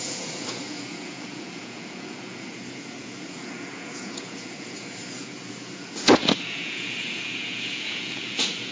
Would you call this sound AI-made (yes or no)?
yes